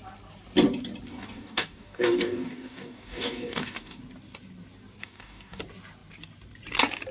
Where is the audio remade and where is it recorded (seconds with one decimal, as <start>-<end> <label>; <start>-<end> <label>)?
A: 0.0-1.1 recorded; 1.1-4.0 remade; 4.0-5.0 recorded; 5.0-5.6 remade; 5.6-7.1 recorded